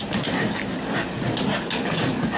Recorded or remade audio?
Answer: recorded